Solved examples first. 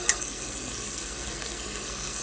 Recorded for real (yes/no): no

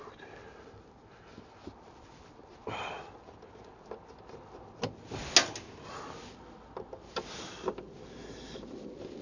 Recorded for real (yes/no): yes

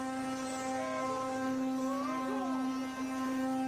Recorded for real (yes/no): yes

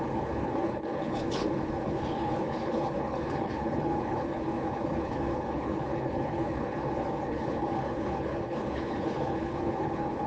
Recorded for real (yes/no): no